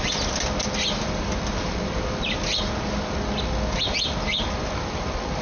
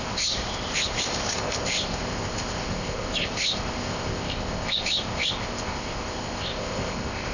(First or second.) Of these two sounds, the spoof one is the second